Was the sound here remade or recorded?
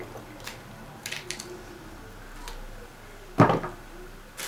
recorded